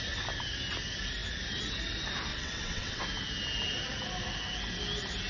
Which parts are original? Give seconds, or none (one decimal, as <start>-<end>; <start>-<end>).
0.0-2.3; 3.0-5.3